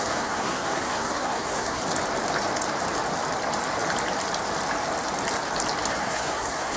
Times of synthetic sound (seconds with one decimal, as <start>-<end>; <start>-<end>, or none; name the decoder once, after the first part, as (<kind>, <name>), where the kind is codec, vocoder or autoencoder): 0.0-1.8 (codec, SNAC); 5.9-6.8